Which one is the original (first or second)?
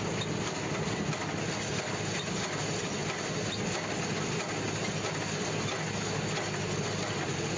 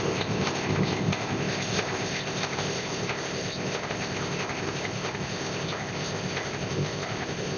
first